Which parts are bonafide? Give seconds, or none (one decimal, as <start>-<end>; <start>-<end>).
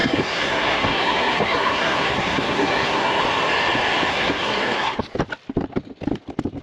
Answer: 3.2-4.1; 5.0-6.6